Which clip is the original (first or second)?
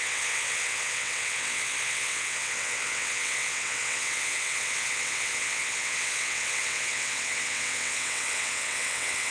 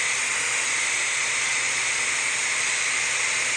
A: second